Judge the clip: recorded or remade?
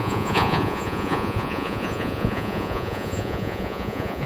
remade